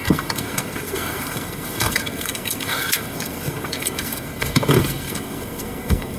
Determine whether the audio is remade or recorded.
remade